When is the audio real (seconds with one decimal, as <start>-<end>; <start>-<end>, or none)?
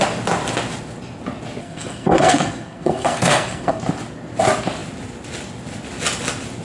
0.0-1.6; 3.8-6.6